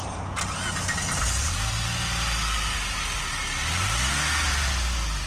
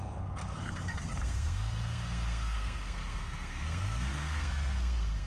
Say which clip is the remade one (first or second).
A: second